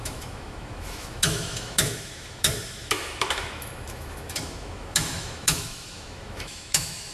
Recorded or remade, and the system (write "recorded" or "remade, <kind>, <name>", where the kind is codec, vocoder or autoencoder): remade, autoencoder, DAC-VAE